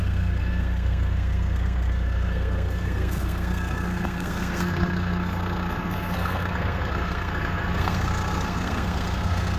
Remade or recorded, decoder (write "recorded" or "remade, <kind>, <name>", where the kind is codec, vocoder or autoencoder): remade, codec, SNAC